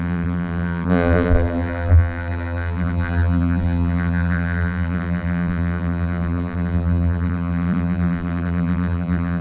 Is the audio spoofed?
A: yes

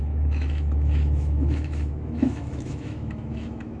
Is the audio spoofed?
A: yes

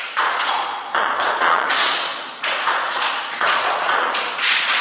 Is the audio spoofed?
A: yes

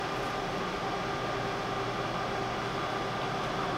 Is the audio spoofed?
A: no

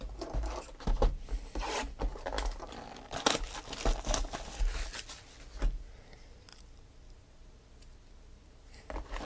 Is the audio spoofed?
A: no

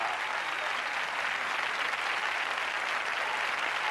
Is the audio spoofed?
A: no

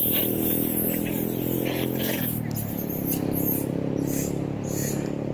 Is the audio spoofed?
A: no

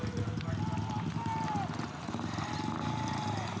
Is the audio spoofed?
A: no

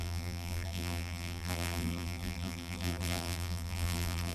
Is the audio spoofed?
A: yes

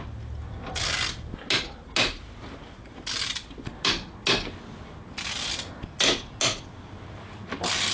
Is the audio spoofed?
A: no